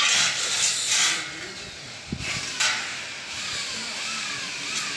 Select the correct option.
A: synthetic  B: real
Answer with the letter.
B